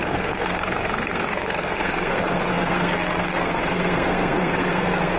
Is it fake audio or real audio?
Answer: fake